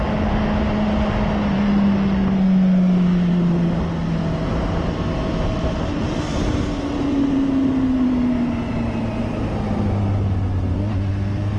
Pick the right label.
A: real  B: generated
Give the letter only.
A